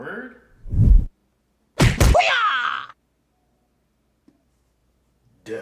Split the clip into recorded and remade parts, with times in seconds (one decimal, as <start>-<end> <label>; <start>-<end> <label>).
0.0-5.6 recorded